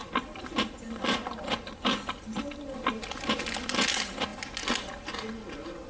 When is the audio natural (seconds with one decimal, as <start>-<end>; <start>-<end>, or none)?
0.0-5.9